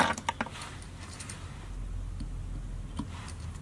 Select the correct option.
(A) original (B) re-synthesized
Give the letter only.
A